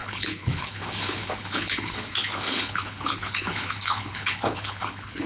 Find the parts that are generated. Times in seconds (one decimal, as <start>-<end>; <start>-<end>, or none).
0.0-5.3